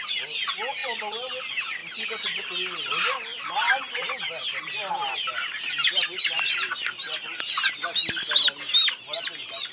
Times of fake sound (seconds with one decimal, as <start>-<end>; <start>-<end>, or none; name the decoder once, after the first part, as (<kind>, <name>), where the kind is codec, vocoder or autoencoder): 0.8-1.4 (vocoder, BigVGAN v2)